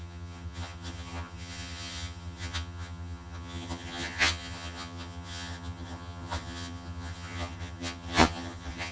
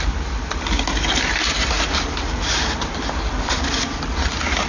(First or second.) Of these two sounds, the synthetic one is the first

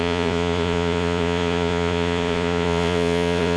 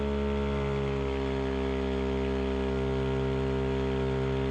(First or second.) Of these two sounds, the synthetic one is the first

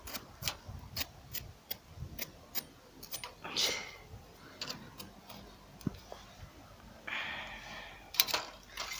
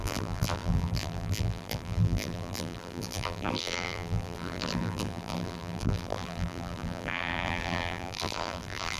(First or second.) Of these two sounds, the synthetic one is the second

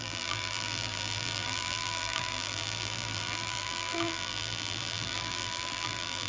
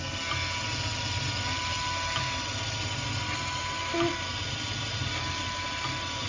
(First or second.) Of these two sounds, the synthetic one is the first